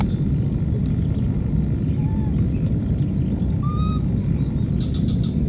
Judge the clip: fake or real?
real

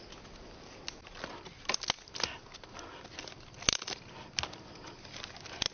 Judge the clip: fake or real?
real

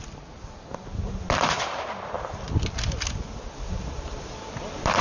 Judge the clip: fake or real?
real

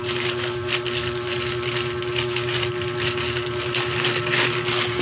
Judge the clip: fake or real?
real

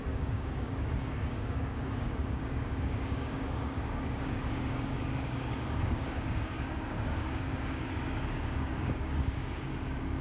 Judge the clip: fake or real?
fake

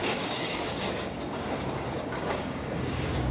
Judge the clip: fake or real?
fake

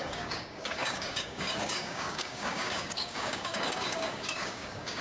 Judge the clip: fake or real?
fake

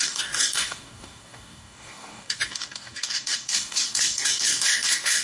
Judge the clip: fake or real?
fake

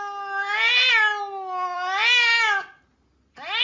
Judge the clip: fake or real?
real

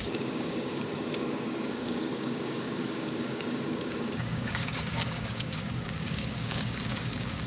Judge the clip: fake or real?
fake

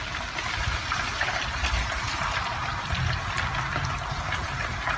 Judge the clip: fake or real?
real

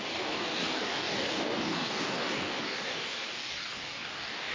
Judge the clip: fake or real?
fake